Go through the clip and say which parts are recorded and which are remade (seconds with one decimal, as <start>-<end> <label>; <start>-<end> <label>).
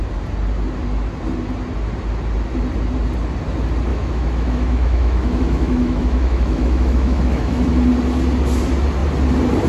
0.0-3.9 recorded; 3.9-7.7 remade; 7.7-9.7 recorded